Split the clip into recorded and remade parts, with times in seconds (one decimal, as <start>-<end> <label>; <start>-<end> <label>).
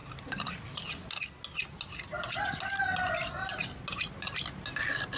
0.0-5.2 recorded